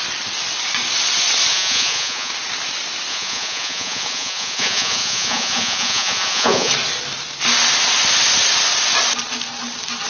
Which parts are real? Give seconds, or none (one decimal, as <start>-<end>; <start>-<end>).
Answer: 0.0-1.5; 2.3-3.1; 6.7-10.1